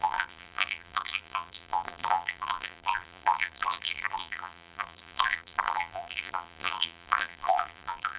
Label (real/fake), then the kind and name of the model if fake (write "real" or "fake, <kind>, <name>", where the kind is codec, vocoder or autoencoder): fake, vocoder, BigVGAN v2